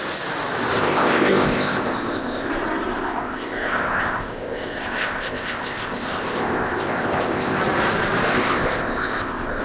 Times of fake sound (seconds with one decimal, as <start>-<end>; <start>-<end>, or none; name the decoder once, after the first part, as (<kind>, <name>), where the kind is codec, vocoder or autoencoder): 0.8-2.5 (codec, ZipCodec); 3.0-7.6; 8.3-9.6